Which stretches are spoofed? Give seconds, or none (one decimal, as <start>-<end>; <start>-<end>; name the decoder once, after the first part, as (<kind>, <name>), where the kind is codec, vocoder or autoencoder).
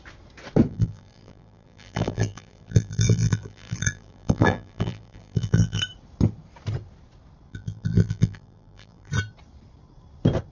0.7-5.8 (vocoder, BigVGAN v2); 7.5-9.1